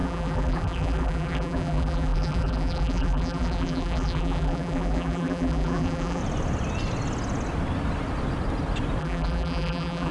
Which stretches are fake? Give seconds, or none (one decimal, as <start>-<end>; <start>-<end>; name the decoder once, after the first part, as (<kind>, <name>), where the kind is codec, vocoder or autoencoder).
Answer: 0.0-6.2 (vocoder, BigVGAN v2); 9.0-10.1